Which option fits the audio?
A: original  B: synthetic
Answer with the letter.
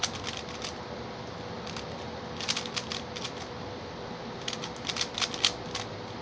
A